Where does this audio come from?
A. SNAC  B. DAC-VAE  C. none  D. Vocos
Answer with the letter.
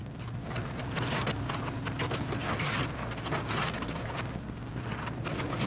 C